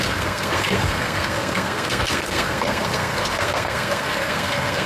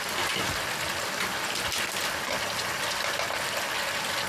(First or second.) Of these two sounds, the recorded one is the second